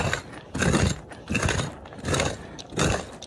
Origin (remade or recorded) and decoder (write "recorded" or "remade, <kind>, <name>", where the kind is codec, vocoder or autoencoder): recorded